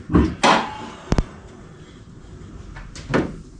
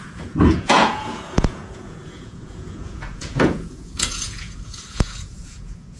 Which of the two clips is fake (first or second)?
second